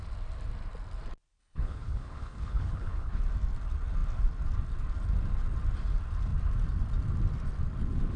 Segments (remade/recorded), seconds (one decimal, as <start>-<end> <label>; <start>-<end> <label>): 0.0-1.4 recorded; 1.4-3.2 remade; 3.2-8.2 recorded